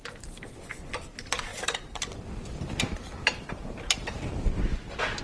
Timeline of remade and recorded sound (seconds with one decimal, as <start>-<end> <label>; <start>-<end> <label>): 0.0-0.5 remade; 0.5-1.5 recorded; 1.5-4.6 remade; 4.6-5.2 recorded